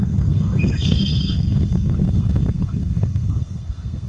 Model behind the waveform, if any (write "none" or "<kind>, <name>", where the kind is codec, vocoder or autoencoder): codec, SNAC